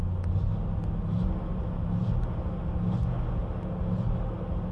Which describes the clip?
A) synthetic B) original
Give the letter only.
B